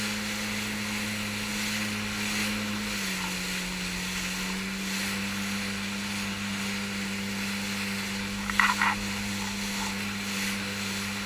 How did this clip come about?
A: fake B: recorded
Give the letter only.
B